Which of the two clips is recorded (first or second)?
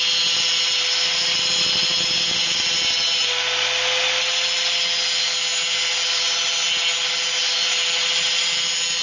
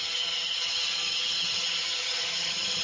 first